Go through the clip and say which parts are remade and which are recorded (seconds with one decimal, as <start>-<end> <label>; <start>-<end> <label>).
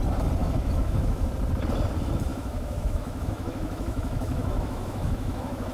0.0-0.4 recorded; 0.4-1.3 remade; 1.3-2.3 recorded; 2.3-5.7 remade